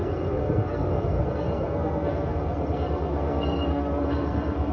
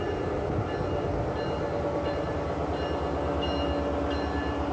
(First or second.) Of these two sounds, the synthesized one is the first